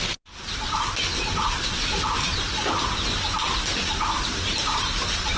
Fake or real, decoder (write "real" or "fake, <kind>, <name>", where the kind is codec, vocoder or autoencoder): real